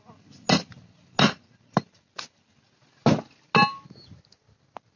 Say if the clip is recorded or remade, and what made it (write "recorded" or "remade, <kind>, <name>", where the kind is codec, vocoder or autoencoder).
recorded